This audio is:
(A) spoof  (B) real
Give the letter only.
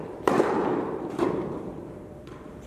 A